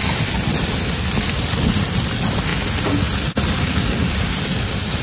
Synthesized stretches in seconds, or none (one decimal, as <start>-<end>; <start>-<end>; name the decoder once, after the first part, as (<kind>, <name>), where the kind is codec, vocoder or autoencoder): 1.2-2.5 (vocoder, BigVGAN v2); 4.4-5.0